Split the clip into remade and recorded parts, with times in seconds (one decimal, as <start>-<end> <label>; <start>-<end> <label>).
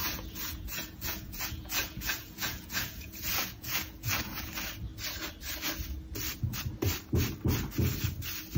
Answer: 0.0-4.5 remade; 4.5-8.6 recorded